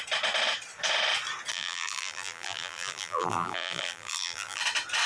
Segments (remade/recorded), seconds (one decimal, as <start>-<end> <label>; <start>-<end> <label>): 0.0-1.5 recorded; 1.5-4.6 remade; 4.6-5.1 recorded